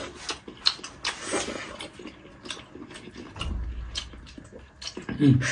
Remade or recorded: recorded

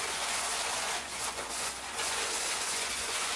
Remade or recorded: remade